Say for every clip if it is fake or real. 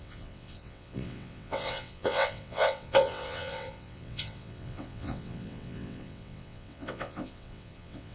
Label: fake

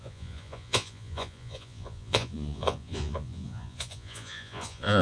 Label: fake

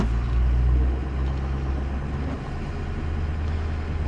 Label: real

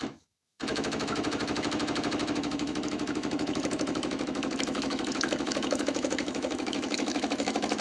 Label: fake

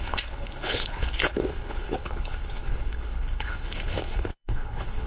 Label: fake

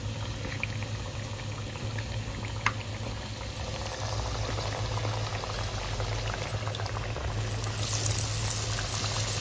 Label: real